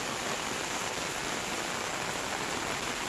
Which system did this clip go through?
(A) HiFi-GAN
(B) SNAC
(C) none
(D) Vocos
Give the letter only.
C